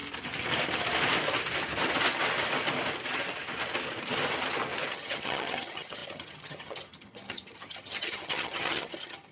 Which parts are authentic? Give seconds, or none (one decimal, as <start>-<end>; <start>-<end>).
0.0-4.9